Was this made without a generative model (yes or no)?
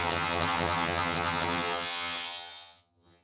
no